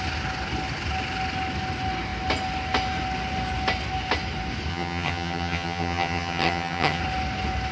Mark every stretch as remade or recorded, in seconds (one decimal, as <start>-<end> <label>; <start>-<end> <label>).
0.0-4.7 recorded; 4.7-7.0 remade; 7.0-7.7 recorded